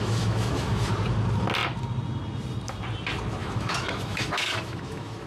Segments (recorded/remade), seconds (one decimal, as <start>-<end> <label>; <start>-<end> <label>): 0.0-0.9 remade; 0.9-3.4 recorded; 3.4-5.3 remade